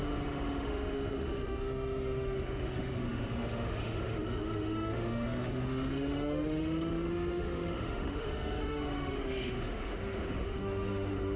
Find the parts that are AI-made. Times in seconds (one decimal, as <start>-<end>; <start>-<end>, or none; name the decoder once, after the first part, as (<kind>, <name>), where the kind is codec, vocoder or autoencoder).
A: 0.0-11.4 (autoencoder, DAC-VAE)